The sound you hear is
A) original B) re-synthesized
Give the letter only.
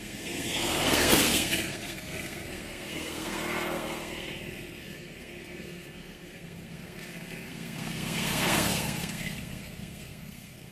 B